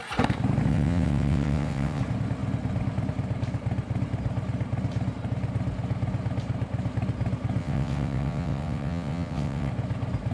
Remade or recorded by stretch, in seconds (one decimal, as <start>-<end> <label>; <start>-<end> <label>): 0.0-0.7 recorded; 0.7-2.0 remade; 2.0-7.6 recorded; 7.6-9.7 remade; 9.7-10.3 recorded